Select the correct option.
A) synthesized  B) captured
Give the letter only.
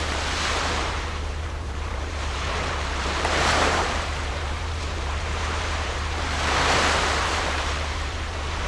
A